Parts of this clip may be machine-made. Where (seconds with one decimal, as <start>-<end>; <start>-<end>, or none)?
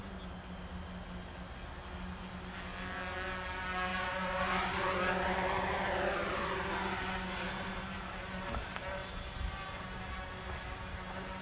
none